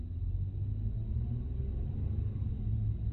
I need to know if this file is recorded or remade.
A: recorded